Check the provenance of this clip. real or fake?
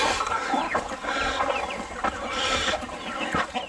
real